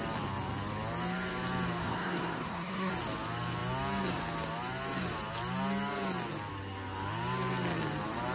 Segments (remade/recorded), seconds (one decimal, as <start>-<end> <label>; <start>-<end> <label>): 0.0-1.8 recorded; 1.8-2.9 remade; 2.9-8.3 recorded